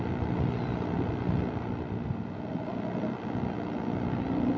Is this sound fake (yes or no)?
no